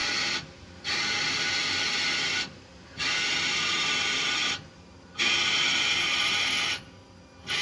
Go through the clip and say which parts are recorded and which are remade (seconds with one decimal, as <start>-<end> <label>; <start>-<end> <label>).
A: 0.0-7.6 recorded